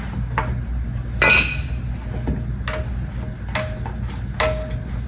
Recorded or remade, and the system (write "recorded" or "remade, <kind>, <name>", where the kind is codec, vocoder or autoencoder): recorded